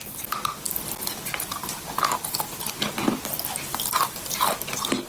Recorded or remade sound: recorded